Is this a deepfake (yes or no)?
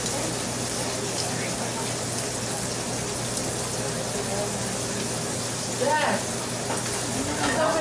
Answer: no